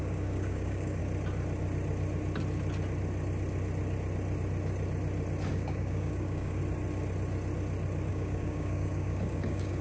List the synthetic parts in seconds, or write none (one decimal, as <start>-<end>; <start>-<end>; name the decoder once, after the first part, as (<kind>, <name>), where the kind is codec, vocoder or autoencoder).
0.0-1.0 (codec, DAC); 5.5-6.6; 8.1-9.8